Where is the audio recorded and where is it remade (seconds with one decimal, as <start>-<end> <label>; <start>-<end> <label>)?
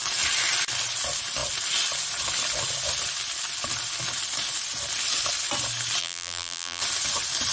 0.0-6.0 recorded; 6.0-6.8 remade; 6.8-7.5 recorded